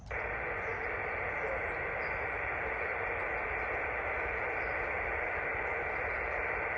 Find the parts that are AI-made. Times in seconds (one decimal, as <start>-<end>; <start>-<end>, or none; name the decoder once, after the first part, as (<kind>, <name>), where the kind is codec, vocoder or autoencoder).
none